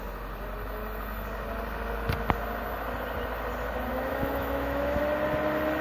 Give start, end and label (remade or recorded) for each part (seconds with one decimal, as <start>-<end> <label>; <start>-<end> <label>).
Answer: 0.0-3.9 recorded; 3.9-5.0 remade; 5.0-5.8 recorded